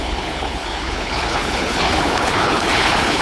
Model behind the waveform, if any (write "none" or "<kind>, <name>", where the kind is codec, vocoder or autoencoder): codec, HILCodec